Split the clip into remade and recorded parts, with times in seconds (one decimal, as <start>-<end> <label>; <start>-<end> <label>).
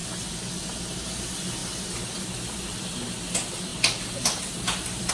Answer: 0.0-5.1 recorded